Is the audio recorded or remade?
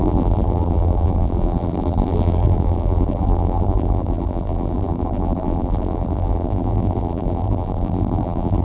remade